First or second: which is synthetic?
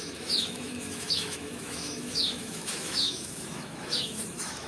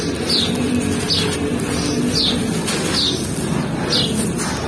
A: first